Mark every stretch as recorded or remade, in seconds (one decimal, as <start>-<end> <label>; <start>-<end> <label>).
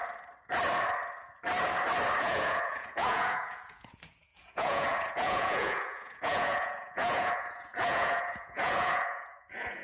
0.0-2.2 recorded; 2.2-9.8 remade